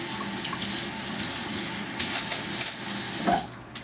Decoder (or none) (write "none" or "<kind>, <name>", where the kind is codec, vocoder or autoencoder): none